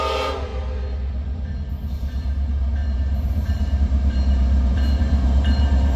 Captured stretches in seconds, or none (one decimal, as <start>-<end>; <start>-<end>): 0.5-1.9